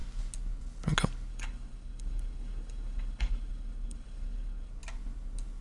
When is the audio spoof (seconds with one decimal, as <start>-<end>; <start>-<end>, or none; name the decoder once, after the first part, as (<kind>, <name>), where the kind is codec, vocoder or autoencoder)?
1.3-4.7 (codec, HILCodec)